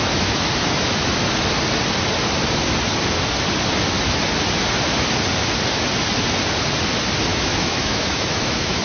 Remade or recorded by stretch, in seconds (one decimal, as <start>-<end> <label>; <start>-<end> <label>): 0.0-7.3 recorded; 7.3-8.8 remade